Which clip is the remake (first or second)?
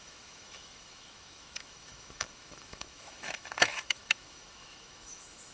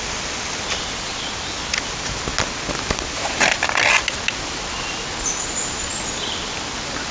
first